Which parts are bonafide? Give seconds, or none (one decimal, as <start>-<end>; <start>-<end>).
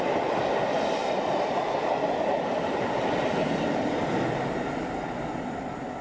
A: 0.0-6.0